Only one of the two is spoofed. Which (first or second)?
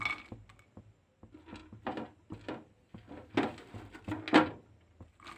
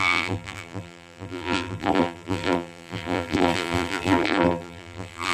second